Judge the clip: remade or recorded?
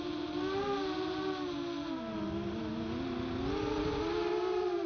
recorded